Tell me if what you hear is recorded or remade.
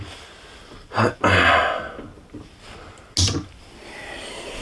recorded